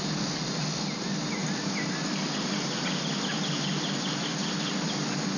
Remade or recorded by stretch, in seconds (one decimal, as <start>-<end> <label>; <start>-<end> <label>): 0.0-5.4 recorded